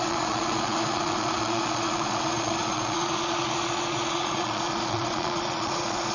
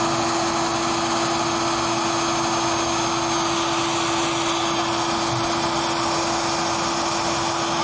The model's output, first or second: first